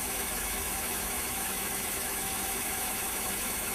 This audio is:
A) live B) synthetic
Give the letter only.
B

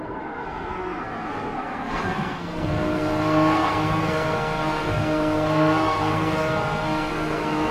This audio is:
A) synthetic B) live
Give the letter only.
A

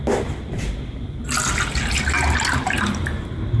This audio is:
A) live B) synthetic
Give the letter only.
A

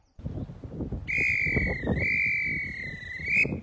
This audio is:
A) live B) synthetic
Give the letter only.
A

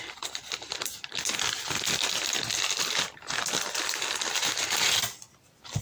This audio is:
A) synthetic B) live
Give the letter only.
B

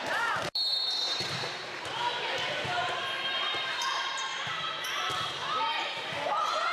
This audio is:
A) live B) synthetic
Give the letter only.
B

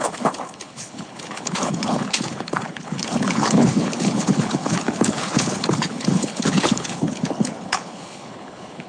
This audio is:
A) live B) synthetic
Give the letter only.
B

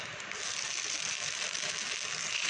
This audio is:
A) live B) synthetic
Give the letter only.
A